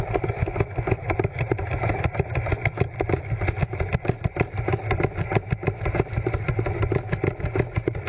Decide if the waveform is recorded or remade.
recorded